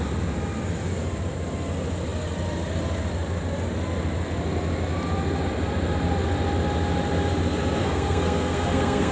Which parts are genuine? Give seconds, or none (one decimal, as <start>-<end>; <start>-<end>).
0.0-7.8